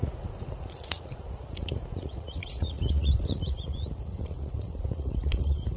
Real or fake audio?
fake